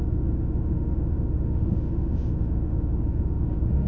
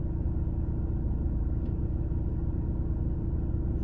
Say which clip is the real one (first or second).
second